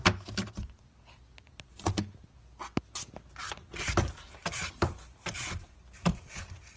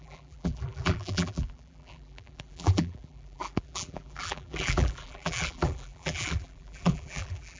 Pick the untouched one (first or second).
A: first